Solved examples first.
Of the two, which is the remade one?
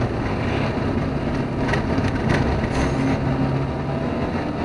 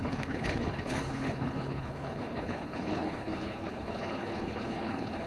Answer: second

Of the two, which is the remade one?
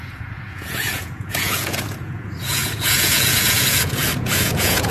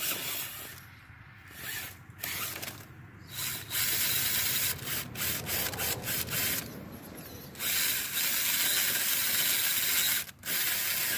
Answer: first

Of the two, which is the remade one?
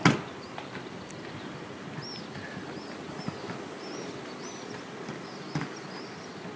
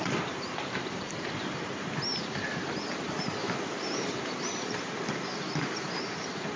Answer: second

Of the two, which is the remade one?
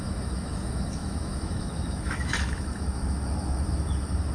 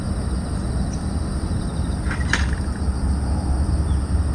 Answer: first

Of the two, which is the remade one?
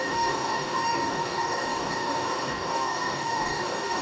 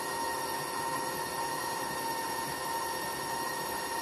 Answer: first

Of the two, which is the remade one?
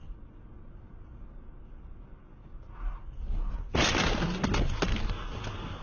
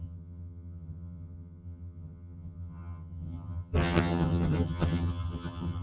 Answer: second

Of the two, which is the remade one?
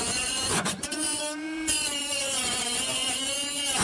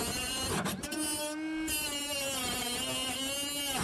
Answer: first